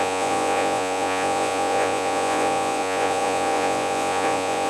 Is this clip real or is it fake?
fake